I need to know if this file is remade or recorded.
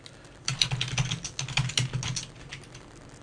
recorded